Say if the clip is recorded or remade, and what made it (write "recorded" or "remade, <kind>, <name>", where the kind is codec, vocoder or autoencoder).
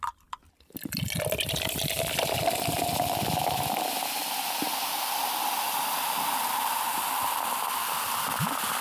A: recorded